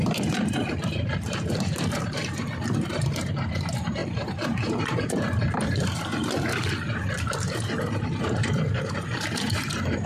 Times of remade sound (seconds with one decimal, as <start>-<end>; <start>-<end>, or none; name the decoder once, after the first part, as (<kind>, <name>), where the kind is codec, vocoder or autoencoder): 0.0-2.2 (vocoder, BigVGAN v2); 2.9-6.2; 6.9-10.1